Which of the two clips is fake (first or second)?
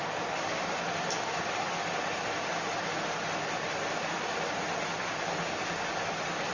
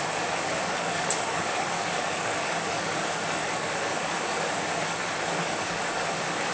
second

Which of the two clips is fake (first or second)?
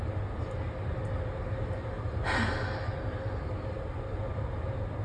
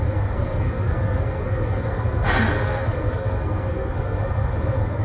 second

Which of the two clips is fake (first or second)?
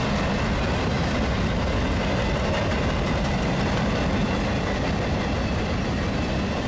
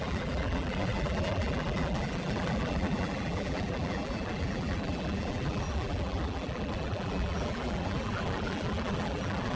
second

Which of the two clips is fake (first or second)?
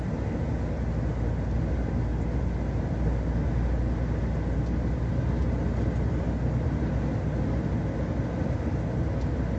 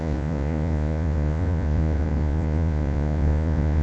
second